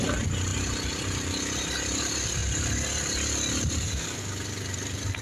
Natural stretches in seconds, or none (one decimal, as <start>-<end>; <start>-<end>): 0.0-5.2